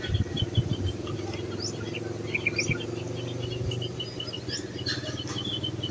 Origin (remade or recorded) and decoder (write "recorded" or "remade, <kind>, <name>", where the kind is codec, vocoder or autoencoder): recorded